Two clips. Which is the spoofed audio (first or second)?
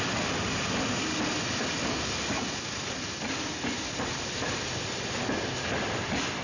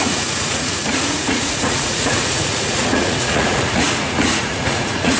second